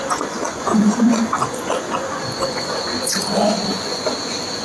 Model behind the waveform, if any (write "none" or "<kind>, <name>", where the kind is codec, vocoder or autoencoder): vocoder, Vocos